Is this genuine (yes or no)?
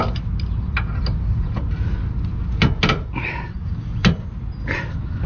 yes